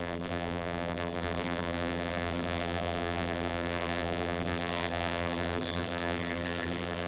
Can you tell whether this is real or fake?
fake